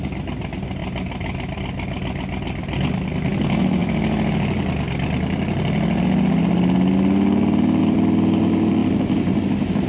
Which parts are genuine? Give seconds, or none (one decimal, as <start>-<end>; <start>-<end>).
0.0-9.9